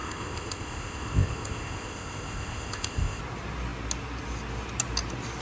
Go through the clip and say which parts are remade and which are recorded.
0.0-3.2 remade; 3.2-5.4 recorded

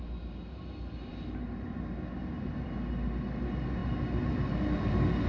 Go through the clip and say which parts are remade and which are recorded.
0.0-5.3 recorded

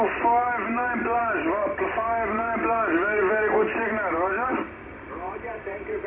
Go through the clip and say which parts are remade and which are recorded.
0.0-6.1 recorded